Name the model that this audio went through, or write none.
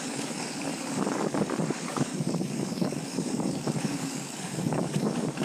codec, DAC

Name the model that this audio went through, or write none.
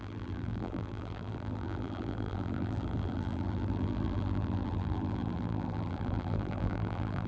vocoder, BigVGAN v2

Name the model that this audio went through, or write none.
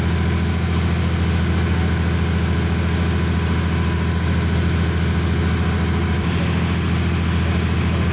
none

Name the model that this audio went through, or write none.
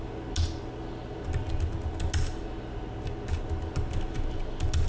none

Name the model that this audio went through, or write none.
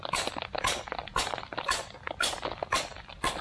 none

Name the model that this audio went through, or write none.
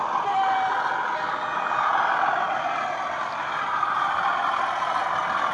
none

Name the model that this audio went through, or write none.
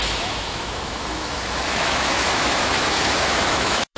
autoencoder, DAC-VAE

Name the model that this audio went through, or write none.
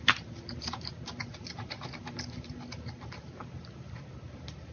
none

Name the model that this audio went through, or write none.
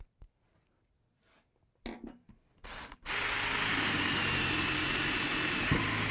none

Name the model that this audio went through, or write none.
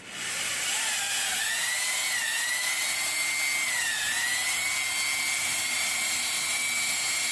none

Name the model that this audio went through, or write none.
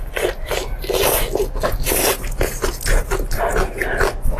none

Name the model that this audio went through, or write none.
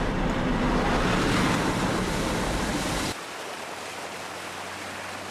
none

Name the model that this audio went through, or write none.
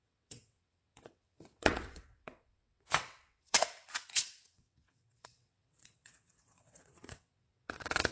vocoder, WaveNeXt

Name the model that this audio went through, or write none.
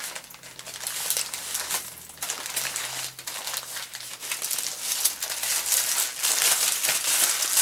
none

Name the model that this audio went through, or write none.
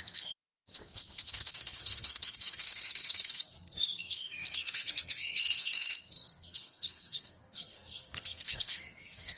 codec, SNAC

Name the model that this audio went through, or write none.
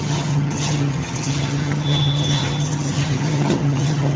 vocoder, HiFi-GAN